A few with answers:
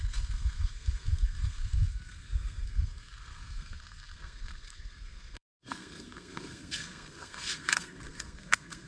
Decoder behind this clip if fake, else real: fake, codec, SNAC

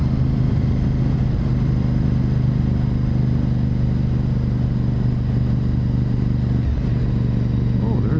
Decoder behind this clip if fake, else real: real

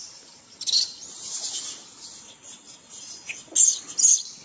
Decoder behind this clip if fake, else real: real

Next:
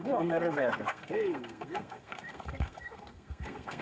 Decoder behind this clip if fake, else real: fake, codec, SNAC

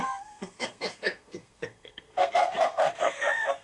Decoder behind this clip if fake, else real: fake, codec, SNAC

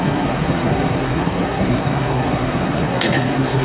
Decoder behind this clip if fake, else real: fake, codec, SNAC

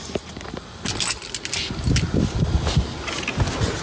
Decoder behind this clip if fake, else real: real